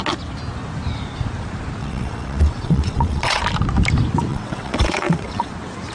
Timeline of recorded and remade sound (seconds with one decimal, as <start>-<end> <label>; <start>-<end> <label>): 0.0-1.8 recorded; 1.8-3.4 remade; 3.4-4.3 recorded; 4.3-5.5 remade; 5.5-5.9 recorded